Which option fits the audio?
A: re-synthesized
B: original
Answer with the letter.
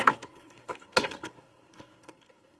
A